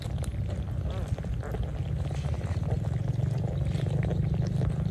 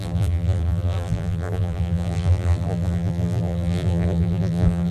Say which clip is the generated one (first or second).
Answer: second